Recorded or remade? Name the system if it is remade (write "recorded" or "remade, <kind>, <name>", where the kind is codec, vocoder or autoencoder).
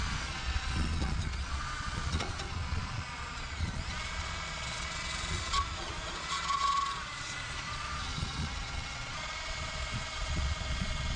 remade, vocoder, Vocos